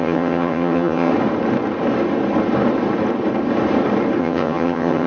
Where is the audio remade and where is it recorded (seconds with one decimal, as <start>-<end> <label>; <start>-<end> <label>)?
0.0-1.1 remade; 1.1-4.2 recorded; 4.2-5.1 remade